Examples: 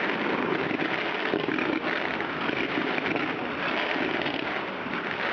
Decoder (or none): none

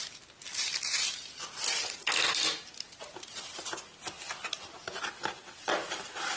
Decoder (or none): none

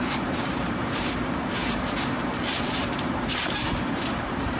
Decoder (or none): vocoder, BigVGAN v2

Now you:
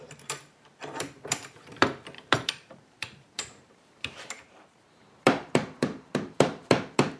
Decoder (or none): vocoder, BigVGAN v2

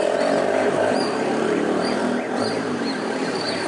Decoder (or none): vocoder, BigVGAN v2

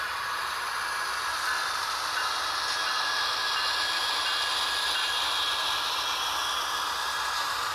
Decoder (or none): none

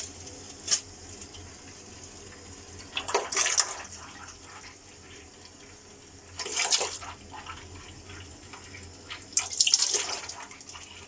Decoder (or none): none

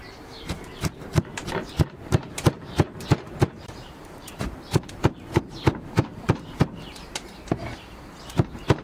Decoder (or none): vocoder, BigVGAN v2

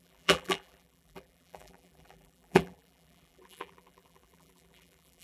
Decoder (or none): vocoder, BigVGAN v2